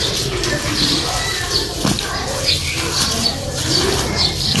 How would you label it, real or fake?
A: fake